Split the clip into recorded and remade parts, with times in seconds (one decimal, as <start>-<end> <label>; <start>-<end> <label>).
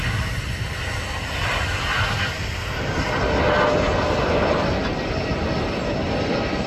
0.0-6.7 recorded